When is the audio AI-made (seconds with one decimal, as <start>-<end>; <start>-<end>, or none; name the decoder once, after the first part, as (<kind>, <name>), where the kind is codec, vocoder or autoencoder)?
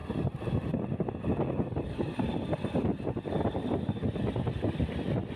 none